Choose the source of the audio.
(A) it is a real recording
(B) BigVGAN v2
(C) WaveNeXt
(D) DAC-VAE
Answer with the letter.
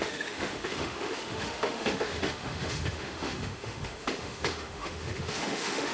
D